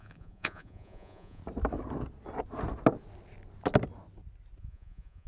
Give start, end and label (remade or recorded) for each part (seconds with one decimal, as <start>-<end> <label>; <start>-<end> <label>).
0.0-1.4 remade; 1.4-4.6 recorded; 4.6-5.3 remade